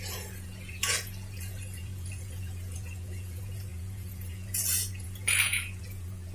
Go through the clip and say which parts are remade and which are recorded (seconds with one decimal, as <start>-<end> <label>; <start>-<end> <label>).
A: 0.0-6.3 remade